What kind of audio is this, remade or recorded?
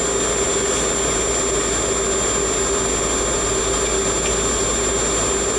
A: recorded